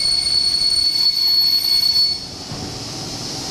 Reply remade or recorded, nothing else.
recorded